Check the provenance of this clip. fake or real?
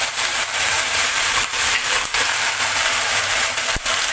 fake